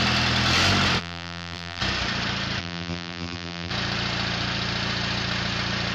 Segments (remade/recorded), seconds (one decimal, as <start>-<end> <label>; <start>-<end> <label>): 0.0-1.0 recorded; 1.0-1.8 remade; 1.8-2.6 recorded; 2.6-3.7 remade; 3.7-5.9 recorded